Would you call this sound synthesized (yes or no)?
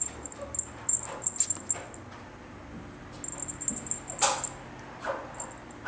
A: no